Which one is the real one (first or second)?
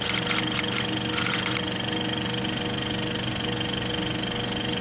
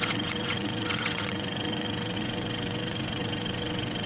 first